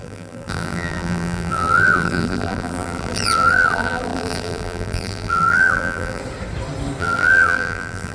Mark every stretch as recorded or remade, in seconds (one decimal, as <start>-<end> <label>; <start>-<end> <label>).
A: 0.0-6.2 remade; 6.2-7.0 recorded; 7.0-8.1 remade